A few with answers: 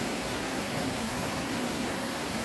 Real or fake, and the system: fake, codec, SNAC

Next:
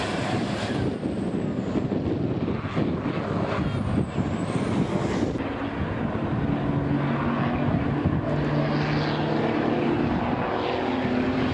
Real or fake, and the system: real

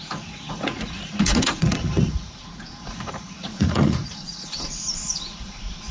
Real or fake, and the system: fake, vocoder, Vocos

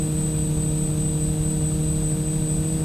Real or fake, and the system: real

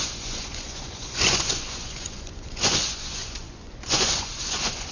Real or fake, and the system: fake, vocoder, Vocos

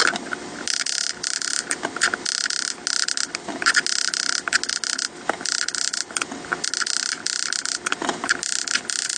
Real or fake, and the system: real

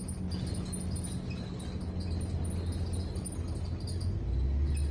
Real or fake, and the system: real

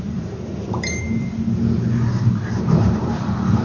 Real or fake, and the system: fake, vocoder, BigVGAN v2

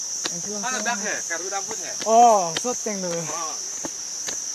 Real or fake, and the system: fake, vocoder, BigVGAN v2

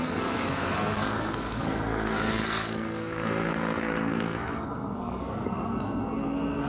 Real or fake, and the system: fake, codec, SNAC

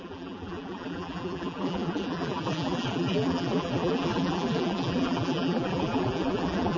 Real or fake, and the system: fake, vocoder, BigVGAN v2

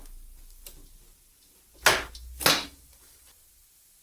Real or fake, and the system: fake, vocoder, BigVGAN v2